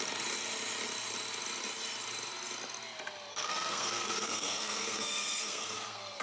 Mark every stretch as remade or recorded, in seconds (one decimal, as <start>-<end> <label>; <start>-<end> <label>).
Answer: 0.0-3.3 recorded; 3.3-6.2 remade